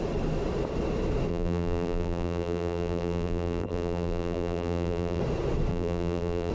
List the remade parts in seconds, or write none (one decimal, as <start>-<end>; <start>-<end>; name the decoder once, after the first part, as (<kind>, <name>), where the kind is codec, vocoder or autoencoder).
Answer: 1.3-5.2 (vocoder, BigVGAN v2); 5.7-6.5